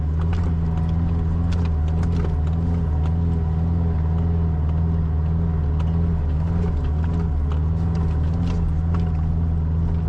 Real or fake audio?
real